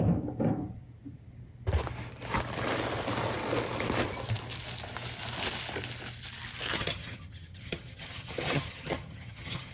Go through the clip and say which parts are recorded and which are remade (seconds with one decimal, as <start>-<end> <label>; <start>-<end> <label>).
0.0-6.7 recorded; 6.7-9.7 remade